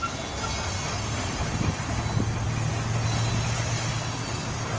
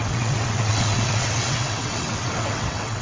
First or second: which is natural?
first